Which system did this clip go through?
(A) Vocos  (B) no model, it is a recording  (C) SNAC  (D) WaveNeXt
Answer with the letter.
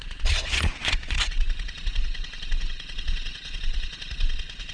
A